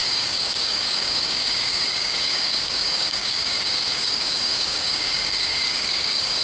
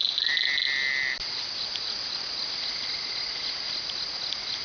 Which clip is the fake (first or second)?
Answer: first